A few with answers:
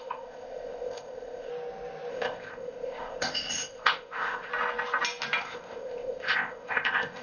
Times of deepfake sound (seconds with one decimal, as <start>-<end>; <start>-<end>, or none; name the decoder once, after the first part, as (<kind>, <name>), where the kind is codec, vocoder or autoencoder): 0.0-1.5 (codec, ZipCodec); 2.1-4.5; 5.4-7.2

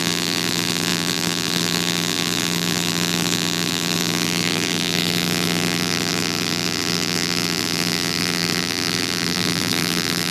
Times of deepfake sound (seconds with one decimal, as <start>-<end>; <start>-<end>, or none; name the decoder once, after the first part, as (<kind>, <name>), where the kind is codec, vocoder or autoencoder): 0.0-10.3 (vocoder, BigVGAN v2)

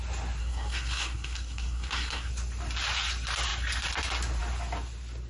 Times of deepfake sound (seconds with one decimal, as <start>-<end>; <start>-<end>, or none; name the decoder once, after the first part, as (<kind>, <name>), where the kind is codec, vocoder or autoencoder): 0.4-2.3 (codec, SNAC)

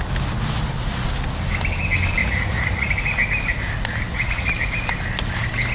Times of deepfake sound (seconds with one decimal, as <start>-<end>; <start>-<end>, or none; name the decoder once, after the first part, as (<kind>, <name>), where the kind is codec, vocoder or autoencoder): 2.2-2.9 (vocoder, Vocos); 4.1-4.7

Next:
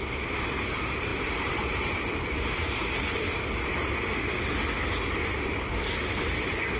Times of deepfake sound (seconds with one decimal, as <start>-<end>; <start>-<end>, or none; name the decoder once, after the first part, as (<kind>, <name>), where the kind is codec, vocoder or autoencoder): 1.1-4.2 (vocoder, BigVGAN v2); 5.2-6.8

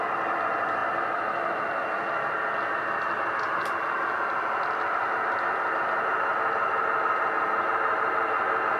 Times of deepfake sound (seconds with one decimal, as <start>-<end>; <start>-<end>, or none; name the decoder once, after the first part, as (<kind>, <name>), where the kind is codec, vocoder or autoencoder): none